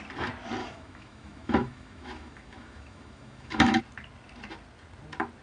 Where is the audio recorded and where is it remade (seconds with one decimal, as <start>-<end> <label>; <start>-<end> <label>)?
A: 0.0-0.6 recorded; 0.6-3.8 remade; 3.8-5.4 recorded